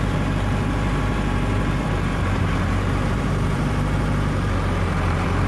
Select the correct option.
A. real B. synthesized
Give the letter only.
B